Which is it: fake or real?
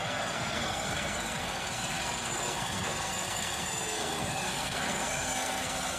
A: fake